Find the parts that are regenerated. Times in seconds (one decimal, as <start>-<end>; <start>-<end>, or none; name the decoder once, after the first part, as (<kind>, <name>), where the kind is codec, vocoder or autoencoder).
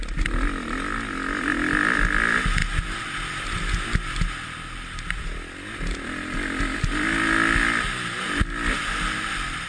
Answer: none